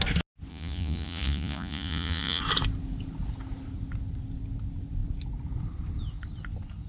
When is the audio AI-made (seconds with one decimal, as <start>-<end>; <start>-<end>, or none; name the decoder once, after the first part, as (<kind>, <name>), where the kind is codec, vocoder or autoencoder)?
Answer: 0.5-2.4 (vocoder, Vocos)